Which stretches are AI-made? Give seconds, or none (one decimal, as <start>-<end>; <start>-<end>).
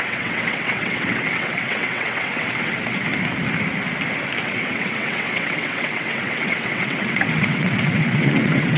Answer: 0.0-3.1; 4.4-8.8